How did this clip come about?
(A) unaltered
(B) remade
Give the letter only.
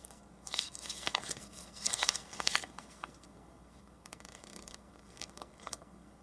B